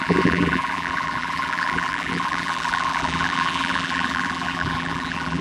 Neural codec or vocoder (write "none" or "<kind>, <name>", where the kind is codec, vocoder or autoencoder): vocoder, BigVGAN v2